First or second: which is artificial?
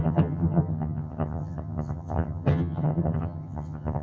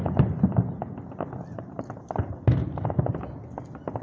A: first